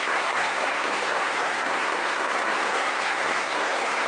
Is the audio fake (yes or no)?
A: yes